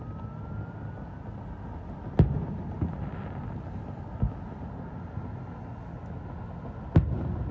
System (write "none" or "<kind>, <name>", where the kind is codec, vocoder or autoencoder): none